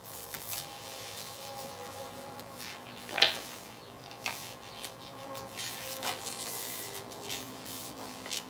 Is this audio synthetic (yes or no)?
yes